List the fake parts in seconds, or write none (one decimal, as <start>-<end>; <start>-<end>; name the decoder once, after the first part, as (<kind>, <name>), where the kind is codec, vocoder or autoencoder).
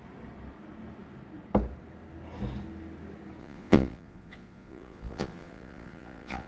3.4-6.5 (vocoder, Vocos)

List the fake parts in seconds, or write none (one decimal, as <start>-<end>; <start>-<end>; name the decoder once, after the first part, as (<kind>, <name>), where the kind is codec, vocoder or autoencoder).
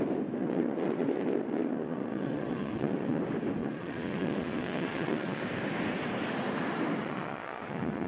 0.4-3.2 (vocoder, Vocos); 3.6-5.4; 7.0-8.1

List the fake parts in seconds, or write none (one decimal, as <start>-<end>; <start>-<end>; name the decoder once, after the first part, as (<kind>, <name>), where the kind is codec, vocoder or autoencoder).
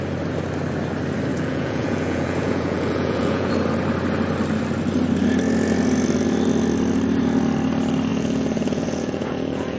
1.3-3.5 (vocoder, Vocos); 8.1-9.8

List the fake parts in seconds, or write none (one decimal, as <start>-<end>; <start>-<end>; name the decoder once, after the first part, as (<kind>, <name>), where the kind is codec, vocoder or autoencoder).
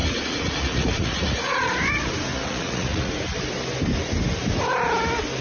0.0-1.7 (vocoder, Vocos); 2.3-3.1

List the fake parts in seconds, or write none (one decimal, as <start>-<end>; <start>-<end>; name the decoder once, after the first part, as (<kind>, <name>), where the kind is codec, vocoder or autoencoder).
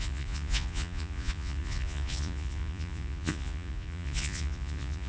0.0-5.1 (vocoder, Vocos)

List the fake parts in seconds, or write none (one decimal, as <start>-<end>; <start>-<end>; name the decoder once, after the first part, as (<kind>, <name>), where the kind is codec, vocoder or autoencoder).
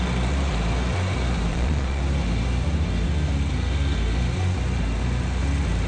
1.5-2.0 (vocoder, Vocos)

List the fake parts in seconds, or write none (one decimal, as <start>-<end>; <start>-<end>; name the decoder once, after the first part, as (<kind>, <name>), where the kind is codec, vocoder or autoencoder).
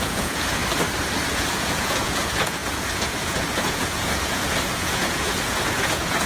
0.0-0.6 (vocoder, Vocos); 1.3-6.3